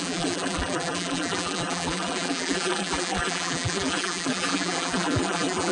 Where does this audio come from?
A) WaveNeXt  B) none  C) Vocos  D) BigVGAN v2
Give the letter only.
D